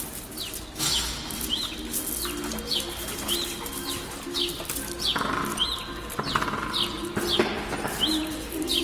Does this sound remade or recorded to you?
recorded